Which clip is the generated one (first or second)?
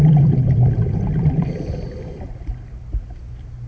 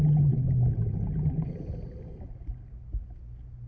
first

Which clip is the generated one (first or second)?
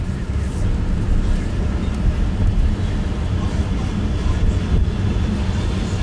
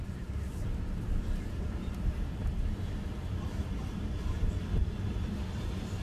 second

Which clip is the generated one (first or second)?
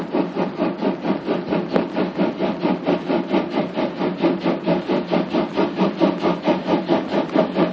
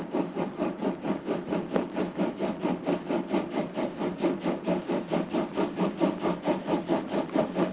second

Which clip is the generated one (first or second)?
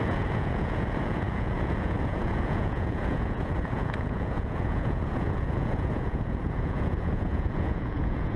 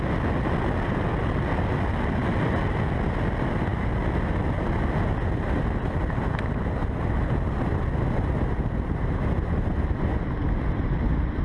first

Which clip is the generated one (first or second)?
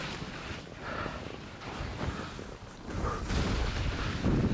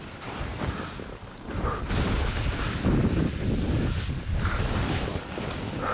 second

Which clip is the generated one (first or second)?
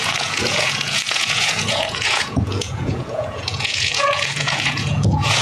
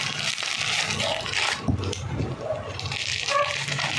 first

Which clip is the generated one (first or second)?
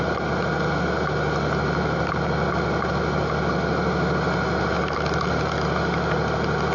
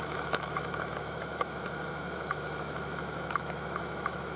second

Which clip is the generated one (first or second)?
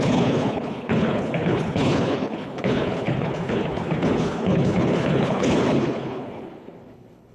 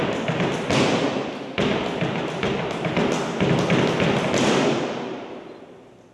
first